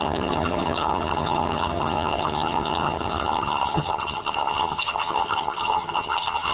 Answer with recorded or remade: remade